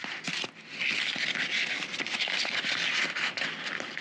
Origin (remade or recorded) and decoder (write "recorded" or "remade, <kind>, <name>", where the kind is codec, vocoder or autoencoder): recorded